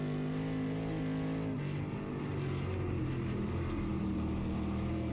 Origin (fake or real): real